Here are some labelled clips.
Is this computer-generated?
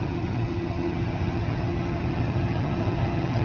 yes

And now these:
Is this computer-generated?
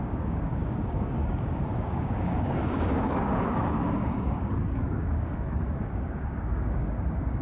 yes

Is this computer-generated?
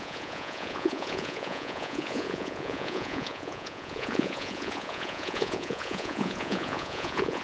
yes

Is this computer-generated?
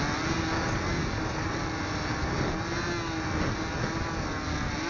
no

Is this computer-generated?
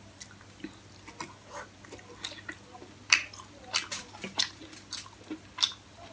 no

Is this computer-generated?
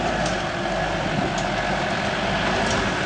no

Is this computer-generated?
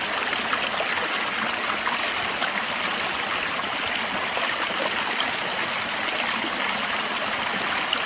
no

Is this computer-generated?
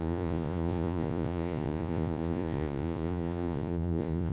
yes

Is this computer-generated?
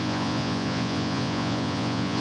yes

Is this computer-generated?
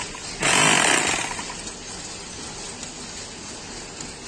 no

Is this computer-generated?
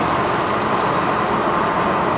no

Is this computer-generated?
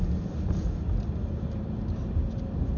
no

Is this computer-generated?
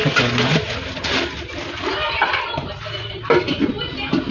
no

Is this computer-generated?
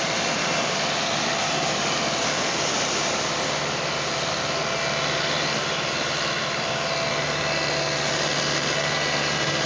no